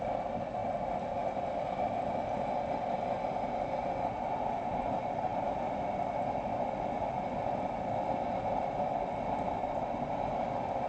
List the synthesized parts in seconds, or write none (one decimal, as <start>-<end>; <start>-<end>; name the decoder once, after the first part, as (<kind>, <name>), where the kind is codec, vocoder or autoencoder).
none